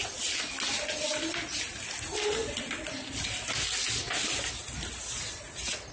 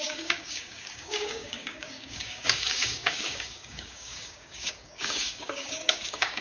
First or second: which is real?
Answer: first